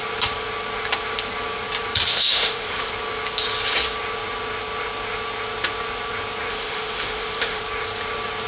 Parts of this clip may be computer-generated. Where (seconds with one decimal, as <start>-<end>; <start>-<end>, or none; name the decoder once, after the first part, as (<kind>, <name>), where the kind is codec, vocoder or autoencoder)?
2.1-2.9 (autoencoder, DAC-VAE); 6.5-7.6